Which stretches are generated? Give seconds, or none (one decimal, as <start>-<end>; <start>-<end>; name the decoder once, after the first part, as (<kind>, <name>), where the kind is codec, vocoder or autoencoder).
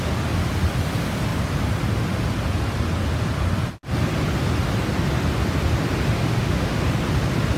6.2-6.8 (autoencoder, DAC-VAE)